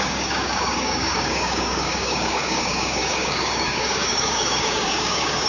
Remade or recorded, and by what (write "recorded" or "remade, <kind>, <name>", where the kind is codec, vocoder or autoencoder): remade, codec, DAC